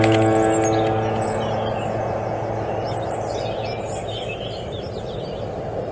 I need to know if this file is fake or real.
real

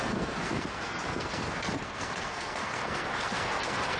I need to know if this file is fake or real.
fake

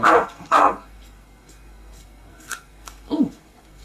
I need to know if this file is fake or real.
fake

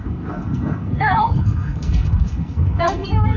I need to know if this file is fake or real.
fake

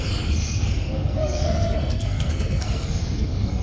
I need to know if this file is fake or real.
fake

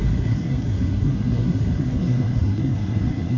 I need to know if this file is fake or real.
fake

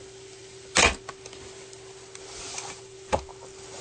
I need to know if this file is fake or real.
real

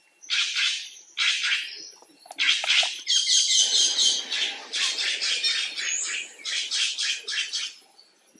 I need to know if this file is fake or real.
real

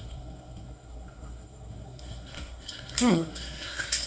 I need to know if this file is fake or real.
fake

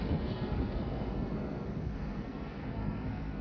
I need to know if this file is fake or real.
fake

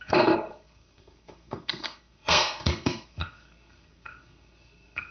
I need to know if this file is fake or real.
fake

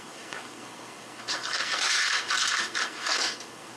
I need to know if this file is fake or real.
fake